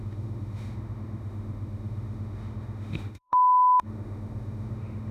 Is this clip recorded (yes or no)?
no